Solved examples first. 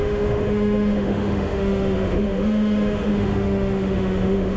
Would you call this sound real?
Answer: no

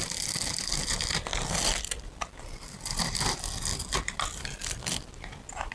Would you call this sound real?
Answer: yes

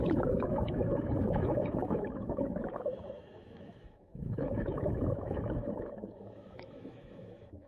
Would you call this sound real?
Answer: no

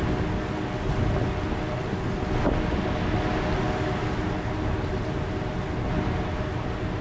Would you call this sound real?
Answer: yes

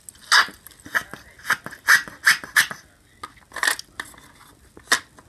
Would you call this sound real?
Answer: yes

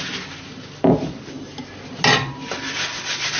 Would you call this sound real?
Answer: yes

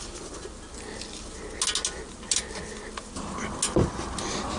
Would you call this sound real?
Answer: yes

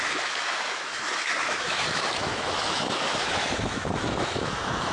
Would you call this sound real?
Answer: no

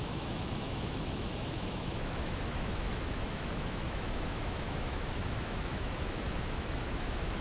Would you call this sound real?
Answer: no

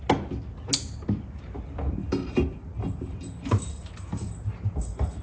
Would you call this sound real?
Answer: yes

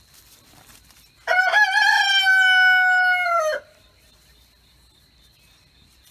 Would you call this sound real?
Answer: yes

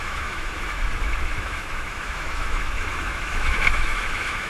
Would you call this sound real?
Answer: no